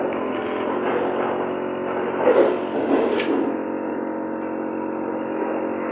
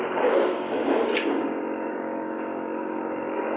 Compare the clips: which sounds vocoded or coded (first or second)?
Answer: second